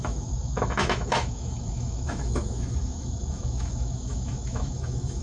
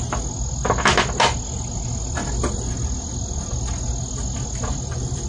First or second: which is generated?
first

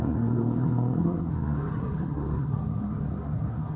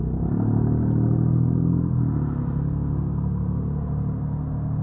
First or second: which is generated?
first